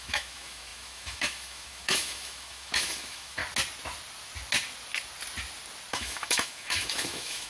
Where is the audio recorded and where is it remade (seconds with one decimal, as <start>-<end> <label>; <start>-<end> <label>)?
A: 0.0-3.4 remade; 3.4-5.9 recorded; 5.9-7.5 remade